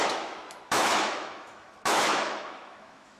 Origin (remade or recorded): remade